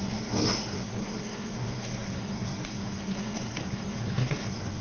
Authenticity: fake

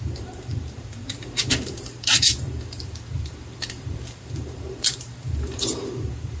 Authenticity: fake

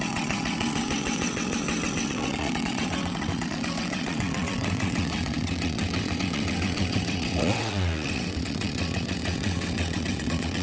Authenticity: fake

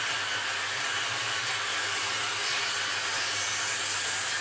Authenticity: real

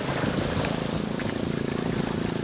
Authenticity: real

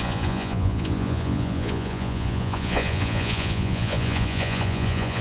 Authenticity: fake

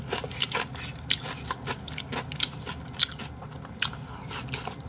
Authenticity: real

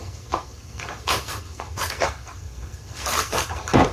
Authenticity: fake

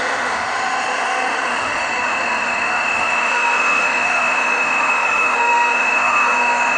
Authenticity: fake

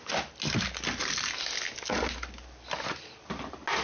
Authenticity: real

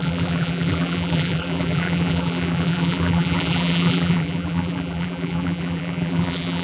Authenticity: fake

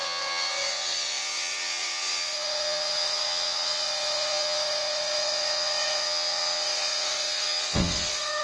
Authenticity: fake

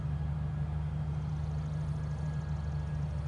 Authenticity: real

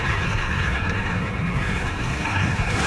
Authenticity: fake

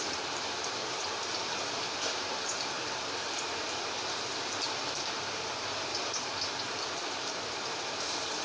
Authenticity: fake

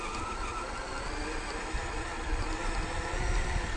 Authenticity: real